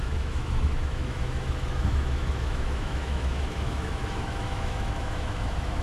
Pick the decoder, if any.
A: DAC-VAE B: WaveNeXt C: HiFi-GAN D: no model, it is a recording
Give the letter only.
A